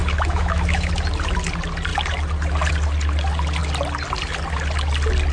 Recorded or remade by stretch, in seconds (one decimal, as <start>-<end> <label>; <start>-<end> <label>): 0.0-0.9 remade; 0.9-5.3 recorded